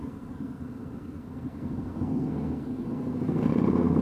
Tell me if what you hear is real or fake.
fake